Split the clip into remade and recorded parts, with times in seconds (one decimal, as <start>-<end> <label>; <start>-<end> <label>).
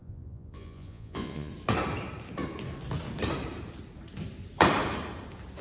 0.0-1.5 remade; 1.5-5.6 recorded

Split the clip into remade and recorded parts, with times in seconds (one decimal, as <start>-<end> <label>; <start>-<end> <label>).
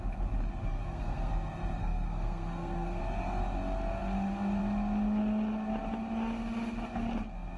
0.0-0.6 recorded; 0.6-1.3 remade; 1.3-1.8 recorded; 1.8-3.0 remade; 3.0-7.6 recorded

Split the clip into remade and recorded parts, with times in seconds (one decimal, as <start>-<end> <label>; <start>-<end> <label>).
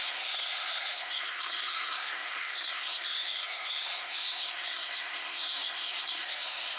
0.0-6.8 remade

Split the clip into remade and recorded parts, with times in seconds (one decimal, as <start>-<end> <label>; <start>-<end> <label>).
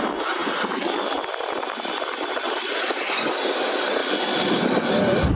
0.0-2.3 recorded; 2.3-3.1 remade; 3.1-4.0 recorded; 4.0-4.7 remade; 4.7-5.3 recorded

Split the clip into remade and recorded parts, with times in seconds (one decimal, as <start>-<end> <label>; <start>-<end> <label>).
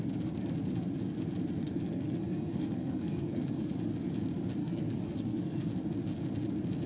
0.0-1.6 recorded; 1.6-3.7 remade; 3.7-4.6 recorded; 4.6-5.7 remade; 5.7-6.9 recorded